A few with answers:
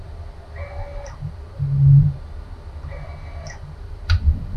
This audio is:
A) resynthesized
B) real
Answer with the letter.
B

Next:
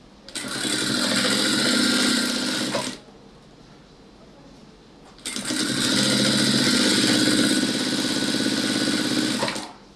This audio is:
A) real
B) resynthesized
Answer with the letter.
A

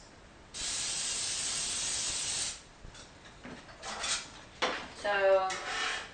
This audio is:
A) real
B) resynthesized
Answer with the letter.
A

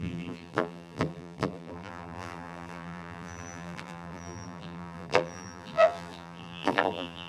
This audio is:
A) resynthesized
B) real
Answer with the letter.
A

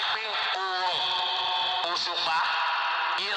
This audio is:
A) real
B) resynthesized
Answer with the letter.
A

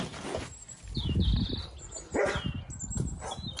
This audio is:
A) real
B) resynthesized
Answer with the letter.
A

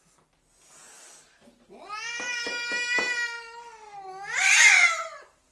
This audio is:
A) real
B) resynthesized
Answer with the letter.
A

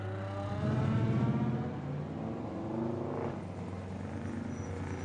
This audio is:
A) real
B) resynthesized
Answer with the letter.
A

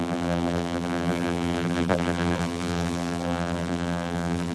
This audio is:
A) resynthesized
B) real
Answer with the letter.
A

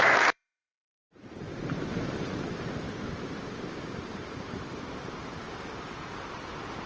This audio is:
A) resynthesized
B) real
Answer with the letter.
A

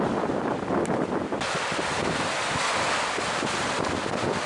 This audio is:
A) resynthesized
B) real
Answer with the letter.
B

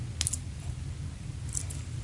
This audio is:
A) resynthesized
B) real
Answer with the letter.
B